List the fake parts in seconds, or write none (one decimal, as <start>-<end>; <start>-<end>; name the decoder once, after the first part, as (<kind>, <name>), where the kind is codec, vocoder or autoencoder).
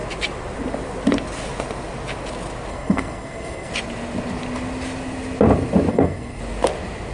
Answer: 2.7-3.7 (codec, SNAC); 5.9-6.4